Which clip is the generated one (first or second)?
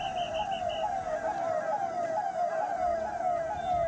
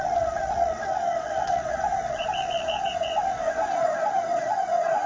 second